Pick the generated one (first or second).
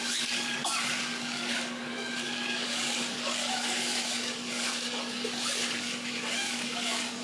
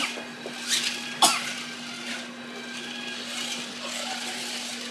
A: first